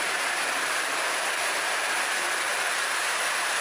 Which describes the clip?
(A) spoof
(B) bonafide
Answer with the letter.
A